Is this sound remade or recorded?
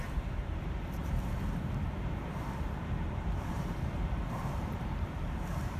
remade